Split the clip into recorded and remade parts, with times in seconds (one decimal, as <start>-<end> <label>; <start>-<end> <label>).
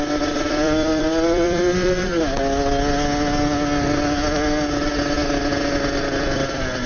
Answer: 0.0-2.1 remade; 2.1-6.2 recorded; 6.2-6.9 remade